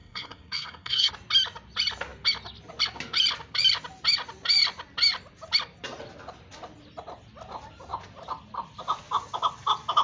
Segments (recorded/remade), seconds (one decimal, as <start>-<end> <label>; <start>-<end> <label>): 0.0-1.1 remade; 1.1-10.0 recorded